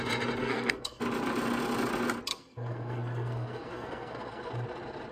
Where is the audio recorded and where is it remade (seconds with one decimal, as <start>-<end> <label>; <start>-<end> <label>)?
0.0-0.4 recorded; 0.4-1.0 remade; 1.0-2.3 recorded; 2.3-4.5 remade; 4.5-5.1 recorded